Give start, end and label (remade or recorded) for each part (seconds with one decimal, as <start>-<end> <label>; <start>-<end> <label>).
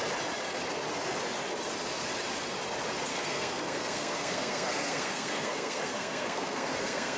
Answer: 0.0-3.1 recorded; 3.1-7.2 remade